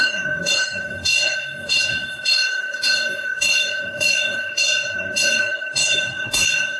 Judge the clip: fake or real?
fake